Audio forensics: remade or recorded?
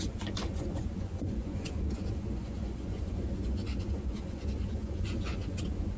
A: remade